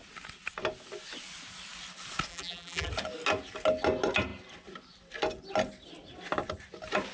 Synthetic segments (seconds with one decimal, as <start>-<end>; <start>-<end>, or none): 2.3-2.9

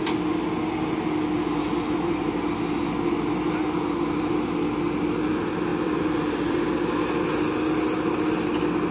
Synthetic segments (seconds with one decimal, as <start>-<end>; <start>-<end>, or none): 5.7-6.9

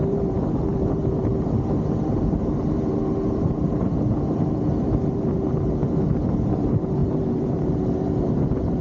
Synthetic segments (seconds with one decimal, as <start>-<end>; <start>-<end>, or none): 0.0-5.8; 6.5-8.8

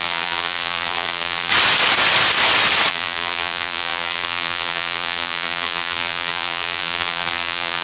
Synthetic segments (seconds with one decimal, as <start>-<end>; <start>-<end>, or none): 0.0-1.5; 2.9-7.8